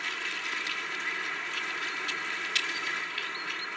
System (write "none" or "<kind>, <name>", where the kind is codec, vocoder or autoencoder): none